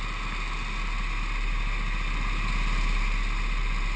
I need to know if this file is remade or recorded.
recorded